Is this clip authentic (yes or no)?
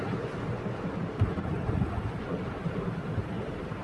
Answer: yes